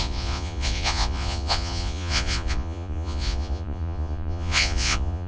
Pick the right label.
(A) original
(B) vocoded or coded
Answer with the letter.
B